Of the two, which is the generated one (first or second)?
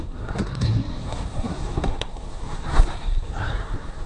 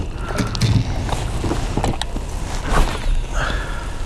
first